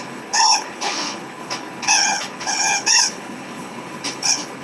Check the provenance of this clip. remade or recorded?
remade